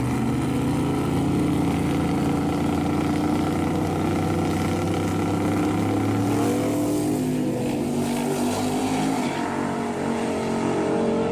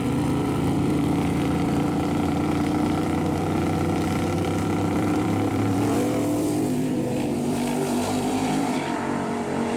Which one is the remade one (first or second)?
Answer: second